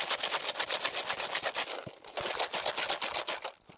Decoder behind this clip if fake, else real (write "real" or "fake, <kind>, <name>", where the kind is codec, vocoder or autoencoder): real